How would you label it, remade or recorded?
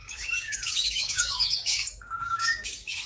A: remade